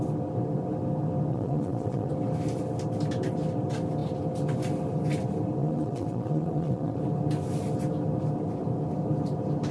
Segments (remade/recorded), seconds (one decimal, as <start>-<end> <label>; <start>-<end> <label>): 0.0-1.3 recorded; 1.3-2.1 remade; 2.1-5.6 recorded; 5.6-7.0 remade; 7.0-9.7 recorded